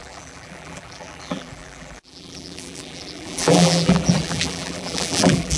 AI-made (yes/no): yes